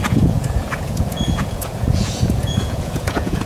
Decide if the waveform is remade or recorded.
remade